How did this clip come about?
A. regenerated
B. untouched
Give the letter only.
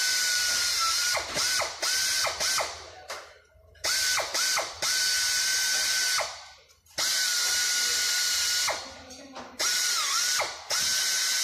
A